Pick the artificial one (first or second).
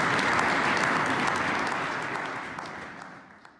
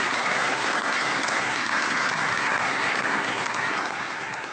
second